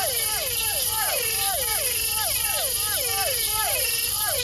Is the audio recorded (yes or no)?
no